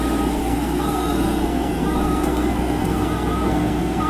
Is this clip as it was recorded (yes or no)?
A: no